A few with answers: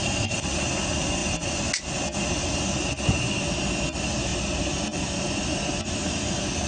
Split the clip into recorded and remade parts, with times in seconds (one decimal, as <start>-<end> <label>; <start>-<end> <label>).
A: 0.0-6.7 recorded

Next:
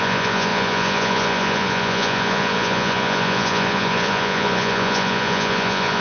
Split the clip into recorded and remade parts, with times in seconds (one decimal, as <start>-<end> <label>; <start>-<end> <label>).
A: 0.0-6.0 remade

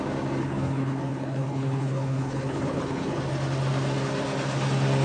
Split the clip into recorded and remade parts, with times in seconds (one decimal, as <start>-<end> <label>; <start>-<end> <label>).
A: 0.0-0.4 recorded; 0.4-3.2 remade; 3.2-5.0 recorded

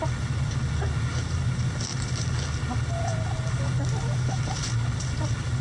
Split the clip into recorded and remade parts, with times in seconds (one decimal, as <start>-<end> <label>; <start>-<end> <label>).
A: 0.0-5.6 recorded

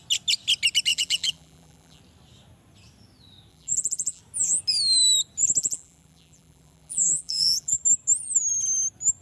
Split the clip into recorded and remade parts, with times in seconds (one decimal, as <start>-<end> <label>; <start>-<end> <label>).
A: 0.0-0.9 recorded; 0.9-2.0 remade; 2.0-3.5 recorded; 3.5-4.2 remade; 4.2-5.6 recorded; 5.6-7.8 remade; 7.8-9.2 recorded

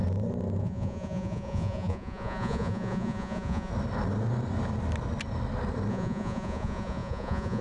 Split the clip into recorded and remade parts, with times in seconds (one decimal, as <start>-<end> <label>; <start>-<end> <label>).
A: 0.0-0.6 recorded; 0.6-3.7 remade; 3.7-5.9 recorded; 5.9-7.6 remade